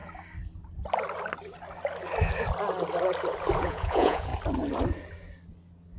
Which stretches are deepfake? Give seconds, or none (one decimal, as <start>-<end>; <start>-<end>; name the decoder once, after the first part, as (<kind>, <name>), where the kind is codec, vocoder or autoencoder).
3.6-4.3 (vocoder, Vocos)